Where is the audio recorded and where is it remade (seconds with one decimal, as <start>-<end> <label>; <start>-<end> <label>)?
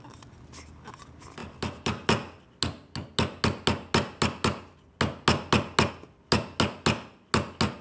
0.0-7.8 recorded